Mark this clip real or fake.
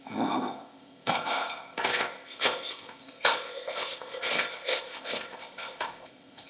fake